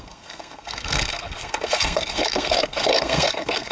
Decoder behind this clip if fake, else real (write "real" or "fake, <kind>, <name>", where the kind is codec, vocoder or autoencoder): fake, codec, SNAC